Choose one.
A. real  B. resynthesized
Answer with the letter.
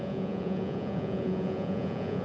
B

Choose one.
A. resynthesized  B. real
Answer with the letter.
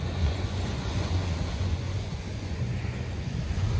A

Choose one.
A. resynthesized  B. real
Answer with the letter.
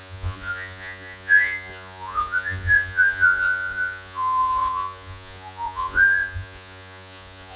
A